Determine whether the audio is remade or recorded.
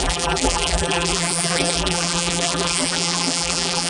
remade